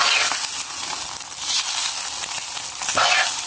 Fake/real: real